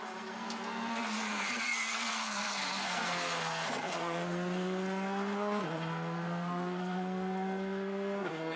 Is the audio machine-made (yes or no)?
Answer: yes